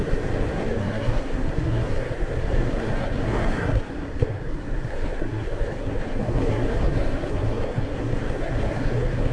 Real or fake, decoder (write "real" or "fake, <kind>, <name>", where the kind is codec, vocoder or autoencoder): fake, codec, SNAC